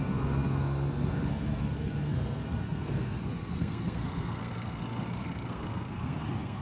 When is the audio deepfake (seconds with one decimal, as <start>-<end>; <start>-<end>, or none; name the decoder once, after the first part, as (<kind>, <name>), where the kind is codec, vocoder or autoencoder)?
0.0-6.6 (codec, SNAC)